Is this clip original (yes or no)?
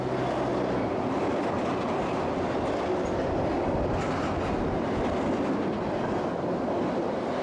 yes